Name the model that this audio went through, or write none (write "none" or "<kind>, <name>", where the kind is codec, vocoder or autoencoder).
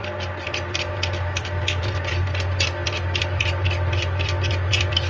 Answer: none